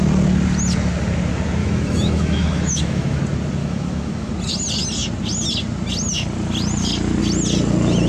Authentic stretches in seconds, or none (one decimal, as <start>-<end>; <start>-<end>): 0.0-1.6; 3.2-3.6; 4.3-8.1